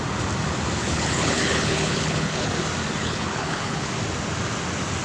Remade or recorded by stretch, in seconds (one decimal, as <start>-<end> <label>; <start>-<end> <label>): 0.0-0.8 recorded; 0.8-2.5 remade; 2.5-3.0 recorded; 3.0-3.9 remade; 3.9-5.0 recorded